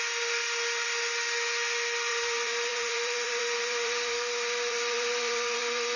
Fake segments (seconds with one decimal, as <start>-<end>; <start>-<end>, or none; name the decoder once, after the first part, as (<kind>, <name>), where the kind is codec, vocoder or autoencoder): 2.1-6.0 (vocoder, BigVGAN v2)